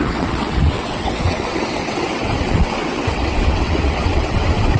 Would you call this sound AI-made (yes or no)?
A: yes